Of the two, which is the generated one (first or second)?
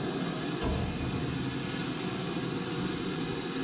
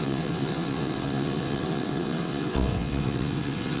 second